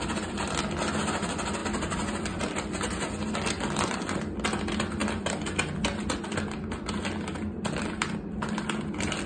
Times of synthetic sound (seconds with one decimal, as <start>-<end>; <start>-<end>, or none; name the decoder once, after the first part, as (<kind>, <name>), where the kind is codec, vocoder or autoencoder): none